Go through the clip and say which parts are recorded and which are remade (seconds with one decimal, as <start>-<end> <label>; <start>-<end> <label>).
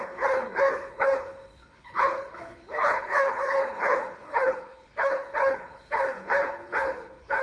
0.0-7.4 remade